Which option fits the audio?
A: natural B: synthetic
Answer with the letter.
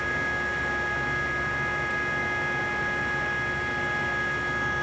A